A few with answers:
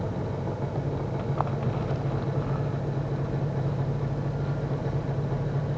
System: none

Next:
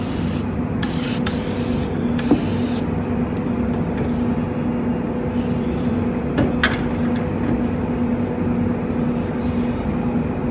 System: none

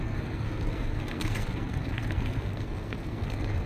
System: codec, SNAC